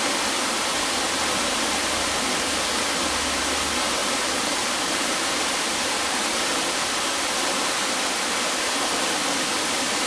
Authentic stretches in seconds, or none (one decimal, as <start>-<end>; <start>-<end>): 0.0-2.3; 2.8-4.0; 7.7-10.1